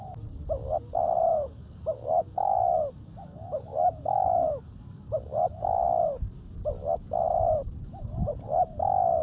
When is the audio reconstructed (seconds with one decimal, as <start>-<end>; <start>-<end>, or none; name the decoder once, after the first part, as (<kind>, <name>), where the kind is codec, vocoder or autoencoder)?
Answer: 1.3-5.8 (codec, DAC)